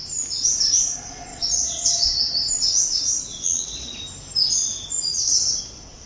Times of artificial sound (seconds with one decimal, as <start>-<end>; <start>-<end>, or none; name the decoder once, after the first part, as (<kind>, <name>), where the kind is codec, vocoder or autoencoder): 1.3-2.5 (vocoder, Vocos); 3.3-3.9; 5.1-6.1